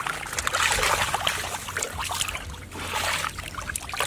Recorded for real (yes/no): yes